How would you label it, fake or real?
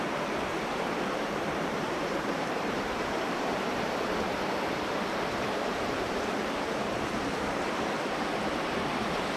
fake